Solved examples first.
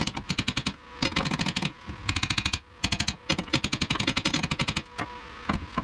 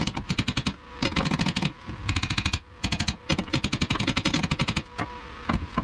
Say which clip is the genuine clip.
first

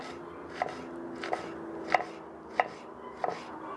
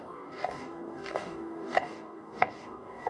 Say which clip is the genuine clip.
first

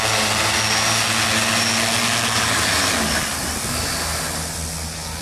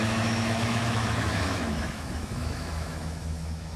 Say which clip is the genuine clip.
first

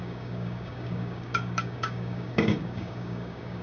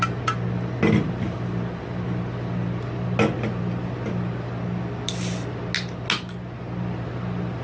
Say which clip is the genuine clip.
second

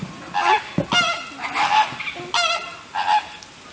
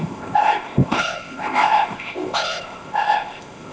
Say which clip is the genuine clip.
first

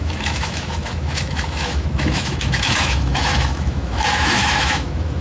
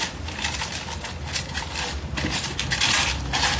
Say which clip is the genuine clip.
second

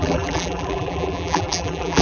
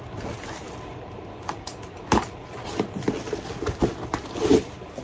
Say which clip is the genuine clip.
second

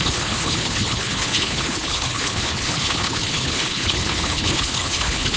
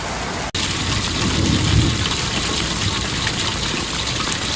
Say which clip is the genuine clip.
second